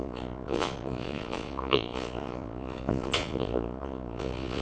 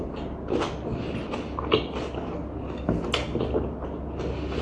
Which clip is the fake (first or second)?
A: first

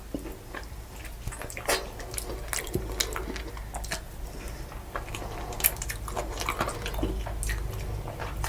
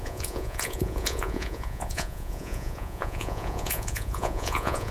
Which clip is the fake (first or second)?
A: second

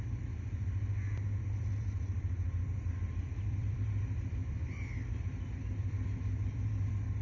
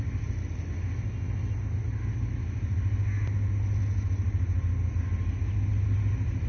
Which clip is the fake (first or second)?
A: first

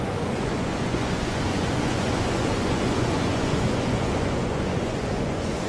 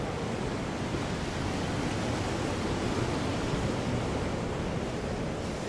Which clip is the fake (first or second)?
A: first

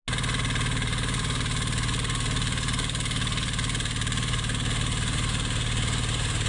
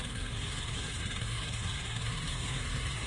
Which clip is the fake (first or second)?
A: second